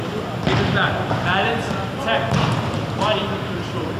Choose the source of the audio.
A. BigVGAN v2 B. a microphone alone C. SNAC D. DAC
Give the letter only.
B